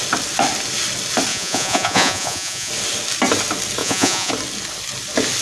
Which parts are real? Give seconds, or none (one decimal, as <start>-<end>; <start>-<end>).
0.0-1.3; 2.7-3.8; 4.3-5.4